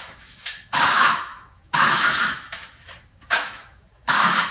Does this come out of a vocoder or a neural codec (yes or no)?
yes